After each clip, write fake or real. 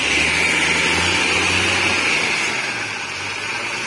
real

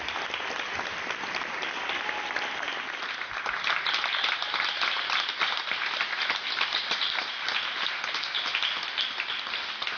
real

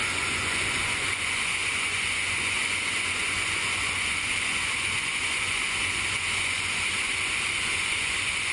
fake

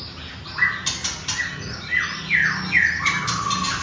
real